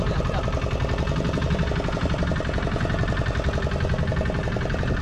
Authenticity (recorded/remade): recorded